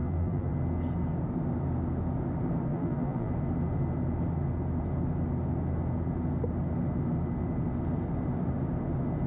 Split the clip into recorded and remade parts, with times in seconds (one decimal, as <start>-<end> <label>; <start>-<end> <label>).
0.0-0.5 remade; 0.5-2.7 recorded; 2.7-3.3 remade; 3.3-9.3 recorded

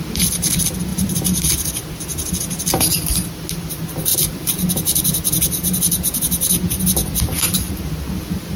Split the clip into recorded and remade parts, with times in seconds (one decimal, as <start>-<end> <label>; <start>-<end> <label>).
0.0-0.9 recorded; 0.9-1.5 remade; 1.5-4.1 recorded; 4.1-4.7 remade; 4.7-8.6 recorded

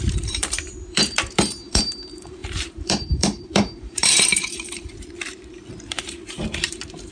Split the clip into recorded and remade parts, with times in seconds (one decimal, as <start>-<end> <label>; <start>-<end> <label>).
0.0-7.1 remade

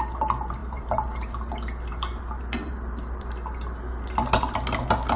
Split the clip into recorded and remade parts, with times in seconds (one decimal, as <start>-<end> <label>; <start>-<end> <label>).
0.0-0.6 recorded; 0.6-1.5 remade; 1.5-1.9 recorded; 1.9-3.3 remade; 3.3-5.2 recorded

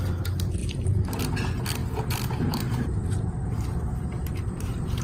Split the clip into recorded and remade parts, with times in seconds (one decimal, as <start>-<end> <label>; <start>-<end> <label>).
0.0-0.6 recorded; 0.6-1.2 remade; 1.2-1.8 recorded; 1.8-5.0 remade

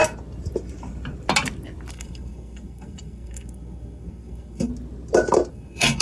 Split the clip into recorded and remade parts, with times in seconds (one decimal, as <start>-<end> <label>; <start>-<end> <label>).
0.0-1.9 recorded; 1.9-4.7 remade; 4.7-5.5 recorded; 5.5-6.0 remade

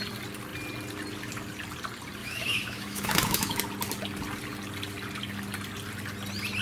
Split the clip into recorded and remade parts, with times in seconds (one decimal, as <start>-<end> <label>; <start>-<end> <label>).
0.0-2.2 recorded; 2.2-3.6 remade; 3.6-6.6 recorded